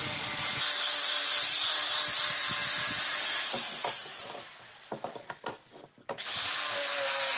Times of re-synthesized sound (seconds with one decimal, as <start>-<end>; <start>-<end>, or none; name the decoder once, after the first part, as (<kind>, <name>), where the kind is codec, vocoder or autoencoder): none